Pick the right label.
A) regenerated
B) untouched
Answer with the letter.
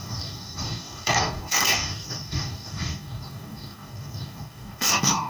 A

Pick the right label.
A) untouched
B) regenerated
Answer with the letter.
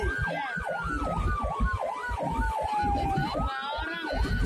A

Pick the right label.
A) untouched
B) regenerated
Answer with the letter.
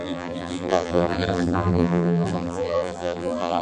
B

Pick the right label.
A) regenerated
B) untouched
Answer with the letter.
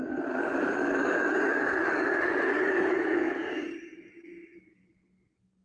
A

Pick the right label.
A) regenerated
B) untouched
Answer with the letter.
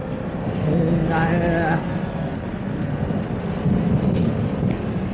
B